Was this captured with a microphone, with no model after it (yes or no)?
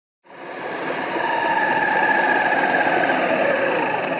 yes